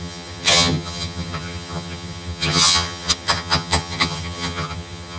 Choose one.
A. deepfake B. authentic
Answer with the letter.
A